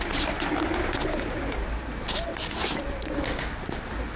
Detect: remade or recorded recorded